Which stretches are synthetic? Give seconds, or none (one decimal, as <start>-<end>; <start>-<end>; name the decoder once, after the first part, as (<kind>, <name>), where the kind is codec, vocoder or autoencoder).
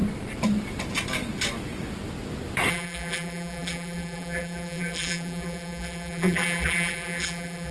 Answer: 2.7-7.7 (vocoder, BigVGAN v2)